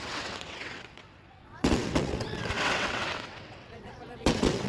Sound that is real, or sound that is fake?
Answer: fake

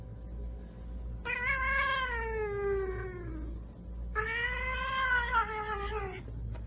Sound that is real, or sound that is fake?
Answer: real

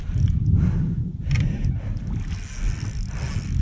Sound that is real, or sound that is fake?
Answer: real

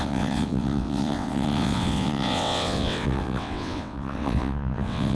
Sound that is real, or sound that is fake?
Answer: fake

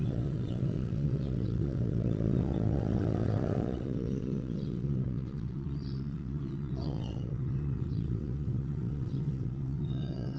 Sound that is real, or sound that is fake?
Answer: fake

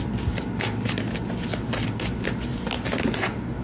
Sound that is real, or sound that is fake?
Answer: real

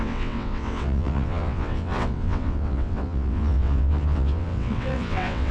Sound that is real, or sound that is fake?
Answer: fake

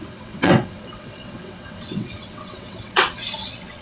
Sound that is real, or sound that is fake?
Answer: fake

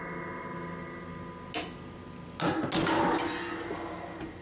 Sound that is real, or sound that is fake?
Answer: real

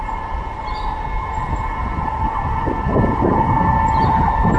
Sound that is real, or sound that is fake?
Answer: real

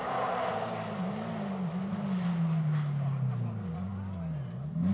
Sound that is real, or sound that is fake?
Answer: real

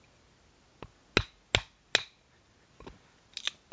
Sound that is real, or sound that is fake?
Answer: real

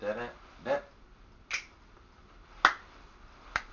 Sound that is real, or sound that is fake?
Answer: real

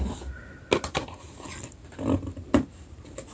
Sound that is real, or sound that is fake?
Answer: real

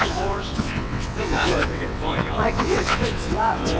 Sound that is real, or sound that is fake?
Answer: fake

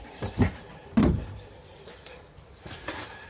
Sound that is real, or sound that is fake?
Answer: real